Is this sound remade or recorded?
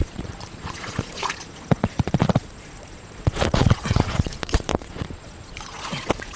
remade